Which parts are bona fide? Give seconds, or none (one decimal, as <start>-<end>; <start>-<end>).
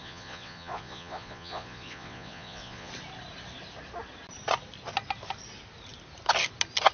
2.9-6.9